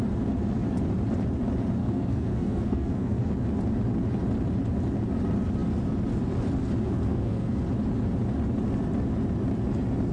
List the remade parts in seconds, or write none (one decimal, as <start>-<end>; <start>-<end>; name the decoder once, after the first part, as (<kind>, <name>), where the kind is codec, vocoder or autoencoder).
1.8-3.3 (codec, SNAC); 7.1-7.6